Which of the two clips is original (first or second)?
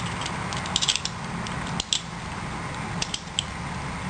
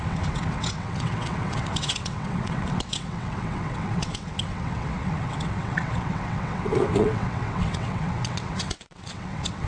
first